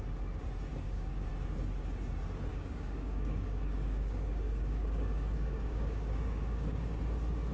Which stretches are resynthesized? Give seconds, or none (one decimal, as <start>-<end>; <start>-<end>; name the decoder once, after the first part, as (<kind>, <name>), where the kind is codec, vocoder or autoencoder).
0.7-1.3 (codec, DAC); 2.5-7.0